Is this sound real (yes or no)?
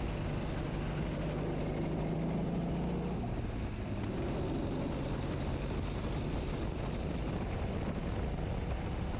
yes